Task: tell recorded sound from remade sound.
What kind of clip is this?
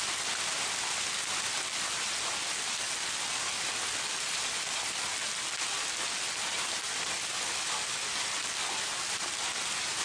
recorded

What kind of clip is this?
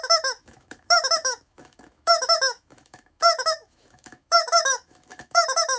remade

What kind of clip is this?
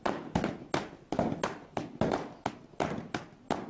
recorded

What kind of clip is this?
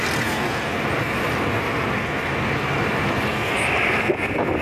recorded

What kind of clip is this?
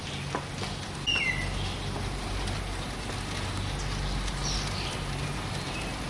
recorded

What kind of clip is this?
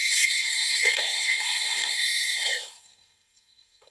remade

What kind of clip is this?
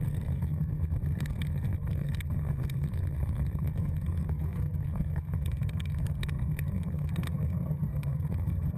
remade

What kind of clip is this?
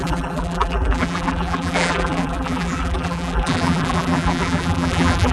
remade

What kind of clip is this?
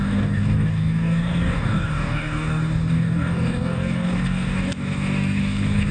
remade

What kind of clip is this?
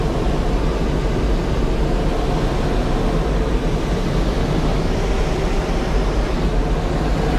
recorded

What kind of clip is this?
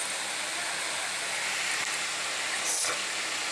recorded